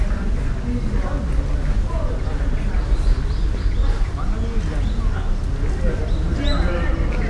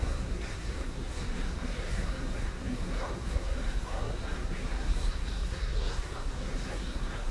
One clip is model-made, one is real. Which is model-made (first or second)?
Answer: second